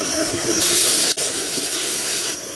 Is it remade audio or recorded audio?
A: remade